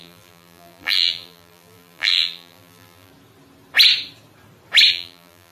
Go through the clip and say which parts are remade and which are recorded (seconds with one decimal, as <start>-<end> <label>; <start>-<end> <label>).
0.0-3.1 remade; 3.1-4.9 recorded; 4.9-5.5 remade